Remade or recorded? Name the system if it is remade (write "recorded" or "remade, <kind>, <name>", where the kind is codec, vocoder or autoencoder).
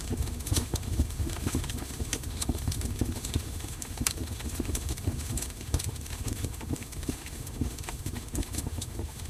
remade, autoencoder, DAC-VAE